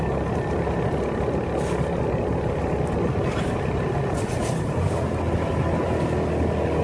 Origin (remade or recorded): recorded